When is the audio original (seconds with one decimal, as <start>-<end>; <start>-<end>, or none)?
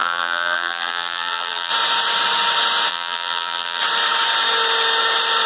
1.7-2.9; 3.8-5.5